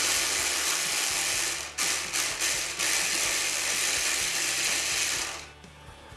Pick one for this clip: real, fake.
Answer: real